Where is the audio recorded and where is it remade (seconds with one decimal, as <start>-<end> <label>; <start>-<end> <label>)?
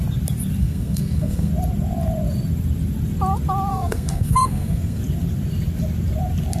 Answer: 0.0-0.6 recorded; 0.6-1.5 remade; 1.5-3.7 recorded; 3.7-5.0 remade; 5.0-6.6 recorded